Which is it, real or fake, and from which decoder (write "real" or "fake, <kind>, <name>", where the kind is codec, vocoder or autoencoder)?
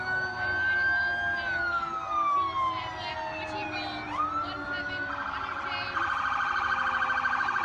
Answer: real